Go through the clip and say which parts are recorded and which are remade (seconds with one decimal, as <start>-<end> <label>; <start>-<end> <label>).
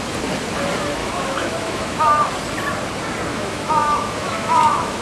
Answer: 0.0-1.0 recorded; 1.0-2.3 remade; 2.3-3.3 recorded; 3.3-5.0 remade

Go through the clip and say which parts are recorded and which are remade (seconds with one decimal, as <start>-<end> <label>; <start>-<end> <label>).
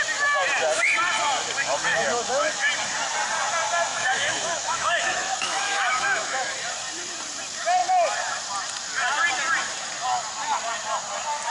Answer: 0.0-1.6 recorded; 1.6-2.7 remade; 2.7-3.9 recorded; 3.9-6.5 remade; 6.5-11.5 recorded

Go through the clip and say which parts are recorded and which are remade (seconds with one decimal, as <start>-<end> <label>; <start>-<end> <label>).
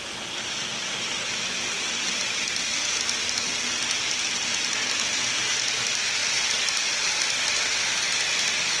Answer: 0.0-8.8 recorded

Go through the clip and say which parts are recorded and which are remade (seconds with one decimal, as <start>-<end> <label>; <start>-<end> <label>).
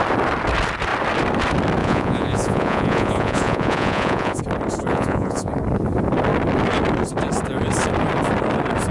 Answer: 0.0-1.8 recorded; 1.8-4.4 remade; 4.4-4.9 recorded; 4.9-5.5 remade; 5.5-8.9 recorded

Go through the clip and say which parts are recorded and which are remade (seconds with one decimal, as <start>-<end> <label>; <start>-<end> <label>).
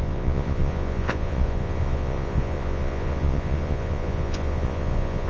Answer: 0.0-5.3 remade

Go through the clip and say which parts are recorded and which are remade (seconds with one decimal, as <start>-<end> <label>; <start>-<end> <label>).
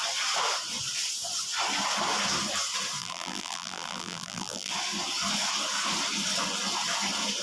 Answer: 0.0-3.0 recorded; 3.0-4.7 remade; 4.7-7.4 recorded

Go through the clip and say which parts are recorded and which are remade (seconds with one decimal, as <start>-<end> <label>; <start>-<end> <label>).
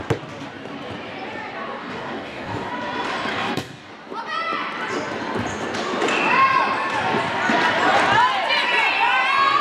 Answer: 0.0-1.8 recorded; 1.8-2.7 remade; 2.7-3.3 recorded; 3.3-3.9 remade; 3.9-9.6 recorded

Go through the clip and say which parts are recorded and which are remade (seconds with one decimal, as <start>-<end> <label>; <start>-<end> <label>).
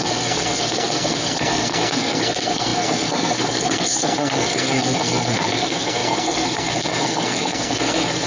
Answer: 0.0-8.3 remade